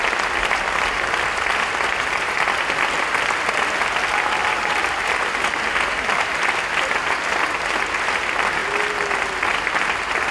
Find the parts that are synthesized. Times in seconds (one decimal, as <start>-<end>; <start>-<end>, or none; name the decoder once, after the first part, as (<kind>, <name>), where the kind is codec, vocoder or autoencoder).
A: 4.4-4.9 (vocoder, BigVGAN v2)